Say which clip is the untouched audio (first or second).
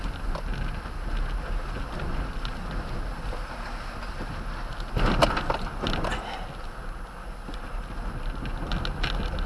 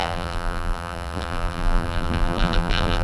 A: first